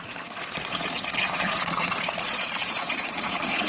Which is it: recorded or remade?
remade